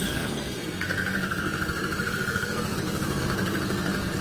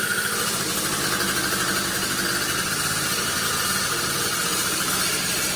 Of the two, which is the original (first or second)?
second